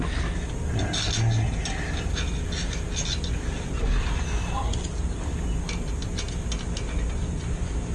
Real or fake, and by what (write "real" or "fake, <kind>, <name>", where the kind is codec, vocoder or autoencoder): real